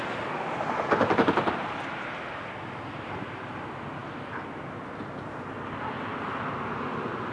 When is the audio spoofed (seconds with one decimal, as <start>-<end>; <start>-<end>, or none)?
none